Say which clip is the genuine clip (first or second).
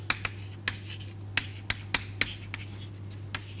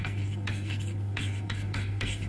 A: first